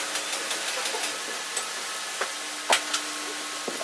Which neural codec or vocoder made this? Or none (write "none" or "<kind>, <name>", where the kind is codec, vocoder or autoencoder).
none